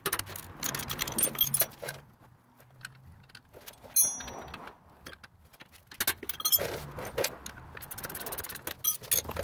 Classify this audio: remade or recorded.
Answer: recorded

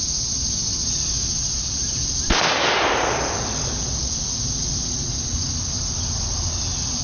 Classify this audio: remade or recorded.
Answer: recorded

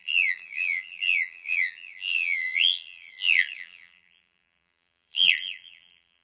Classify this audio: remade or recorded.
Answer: remade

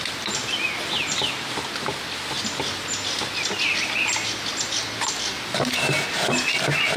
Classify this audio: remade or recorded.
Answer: recorded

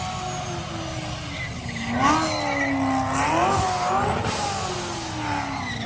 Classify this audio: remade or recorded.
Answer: recorded